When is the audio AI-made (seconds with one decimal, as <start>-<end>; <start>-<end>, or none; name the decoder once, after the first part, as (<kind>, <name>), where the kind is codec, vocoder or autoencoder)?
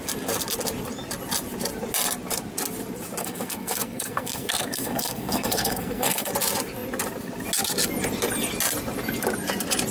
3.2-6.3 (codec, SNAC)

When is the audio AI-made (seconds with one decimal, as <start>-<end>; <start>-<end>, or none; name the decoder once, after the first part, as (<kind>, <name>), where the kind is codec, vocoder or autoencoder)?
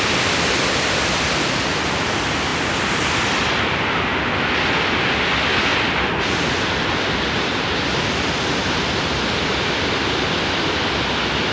none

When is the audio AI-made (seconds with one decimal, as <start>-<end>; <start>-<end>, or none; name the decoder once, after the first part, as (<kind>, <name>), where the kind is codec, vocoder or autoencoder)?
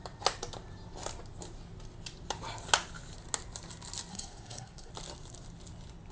4.1-4.9 (codec, SNAC)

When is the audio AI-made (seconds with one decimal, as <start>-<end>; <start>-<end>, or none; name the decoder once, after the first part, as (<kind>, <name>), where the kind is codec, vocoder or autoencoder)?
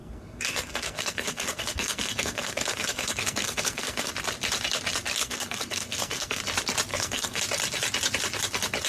0.0-4.1 (codec, SNAC); 5.2-6.4; 6.9-7.4